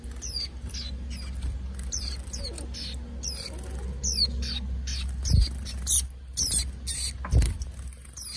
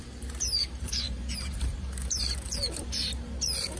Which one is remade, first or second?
second